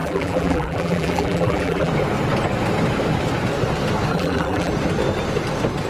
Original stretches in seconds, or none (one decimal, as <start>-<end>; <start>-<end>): 1.9-4.1; 4.7-5.9